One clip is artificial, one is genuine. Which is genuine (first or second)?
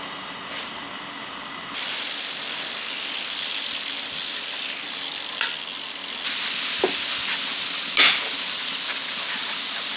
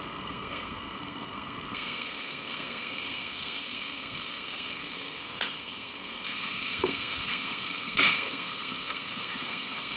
first